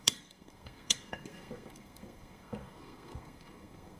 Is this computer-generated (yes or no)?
yes